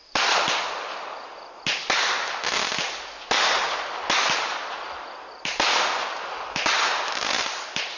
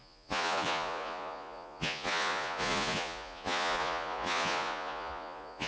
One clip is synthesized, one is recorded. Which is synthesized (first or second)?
second